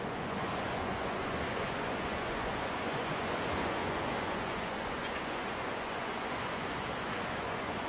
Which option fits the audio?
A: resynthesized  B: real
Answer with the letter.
A